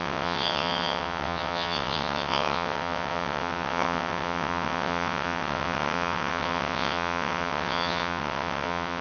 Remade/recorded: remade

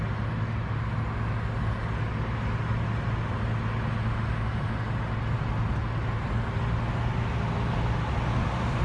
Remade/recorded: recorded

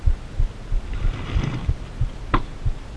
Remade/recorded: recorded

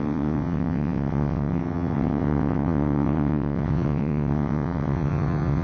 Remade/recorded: remade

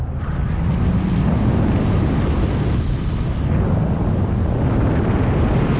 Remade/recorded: recorded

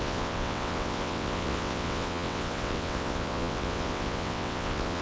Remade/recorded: remade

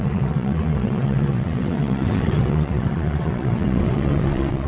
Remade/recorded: remade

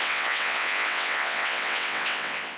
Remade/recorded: remade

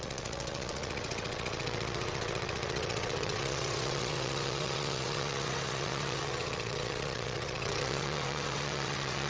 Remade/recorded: remade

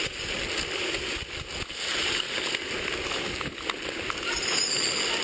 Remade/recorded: recorded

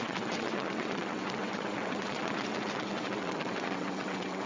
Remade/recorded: remade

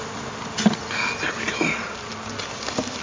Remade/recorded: recorded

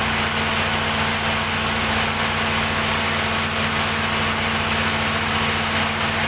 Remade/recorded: recorded